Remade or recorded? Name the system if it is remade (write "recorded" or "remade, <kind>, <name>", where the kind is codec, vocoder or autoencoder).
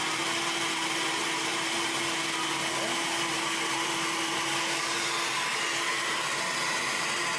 recorded